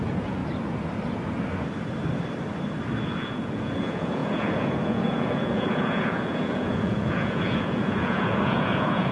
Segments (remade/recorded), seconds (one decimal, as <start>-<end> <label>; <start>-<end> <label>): 0.0-0.4 remade; 0.4-3.0 recorded; 3.0-9.1 remade